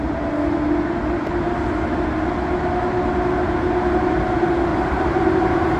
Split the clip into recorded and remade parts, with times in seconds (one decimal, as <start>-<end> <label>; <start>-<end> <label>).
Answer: 0.0-4.7 recorded; 4.7-5.8 remade